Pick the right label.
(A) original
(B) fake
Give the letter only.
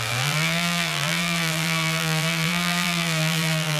B